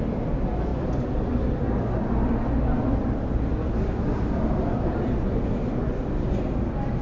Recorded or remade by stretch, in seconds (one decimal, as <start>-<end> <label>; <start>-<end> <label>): 0.0-7.0 recorded